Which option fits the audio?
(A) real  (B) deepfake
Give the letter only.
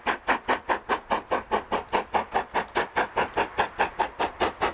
A